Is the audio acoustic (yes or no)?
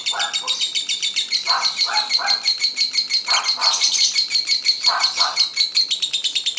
yes